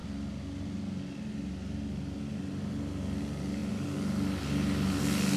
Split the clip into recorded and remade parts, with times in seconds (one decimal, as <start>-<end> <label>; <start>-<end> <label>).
0.0-5.4 recorded